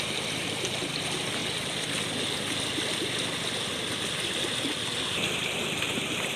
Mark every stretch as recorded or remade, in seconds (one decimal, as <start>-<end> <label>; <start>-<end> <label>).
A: 0.0-6.4 recorded